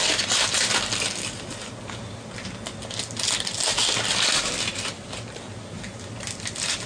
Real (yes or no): yes